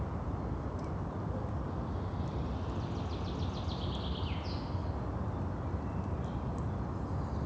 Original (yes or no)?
yes